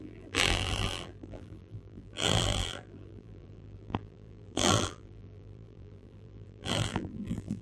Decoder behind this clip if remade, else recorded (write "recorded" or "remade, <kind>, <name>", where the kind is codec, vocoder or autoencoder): remade, vocoder, BigVGAN v2